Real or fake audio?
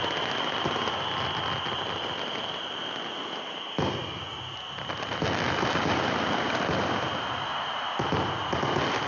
real